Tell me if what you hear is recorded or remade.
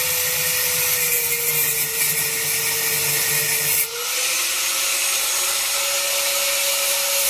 recorded